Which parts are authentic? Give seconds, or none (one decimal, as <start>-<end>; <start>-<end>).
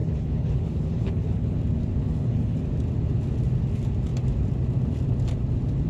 1.6-2.0; 2.6-5.9